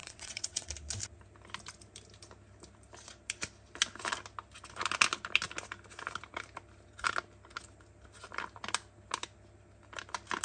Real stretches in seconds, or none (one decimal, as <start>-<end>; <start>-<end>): 0.7-10.4